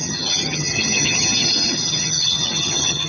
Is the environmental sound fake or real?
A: fake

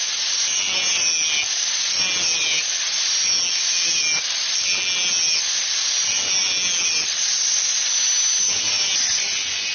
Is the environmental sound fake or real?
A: real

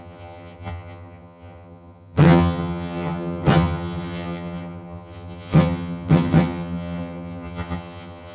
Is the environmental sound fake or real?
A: fake